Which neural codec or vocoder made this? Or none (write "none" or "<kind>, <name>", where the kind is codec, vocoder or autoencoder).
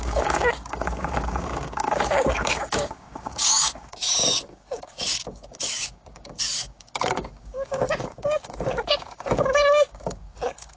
codec, DAC